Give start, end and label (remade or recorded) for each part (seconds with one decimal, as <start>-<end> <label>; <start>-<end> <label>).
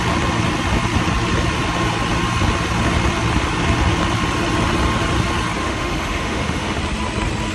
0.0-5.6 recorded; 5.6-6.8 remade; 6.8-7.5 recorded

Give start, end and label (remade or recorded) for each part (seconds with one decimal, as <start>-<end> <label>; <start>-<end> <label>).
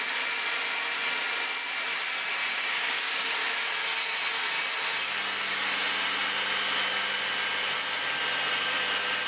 0.0-2.4 recorded; 2.4-3.3 remade; 3.3-9.3 recorded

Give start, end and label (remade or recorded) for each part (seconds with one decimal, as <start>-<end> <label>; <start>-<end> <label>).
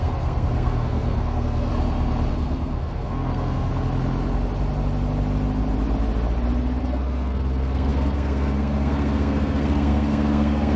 0.0-1.7 remade; 1.7-2.3 recorded; 2.3-3.7 remade; 3.7-6.8 recorded; 6.8-10.8 remade